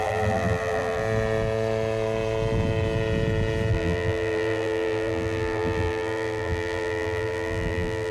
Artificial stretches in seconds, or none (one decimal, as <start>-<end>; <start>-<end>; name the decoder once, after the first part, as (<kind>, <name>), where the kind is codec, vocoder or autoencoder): 0.0-1.0 (vocoder, BigVGAN v2); 3.7-8.1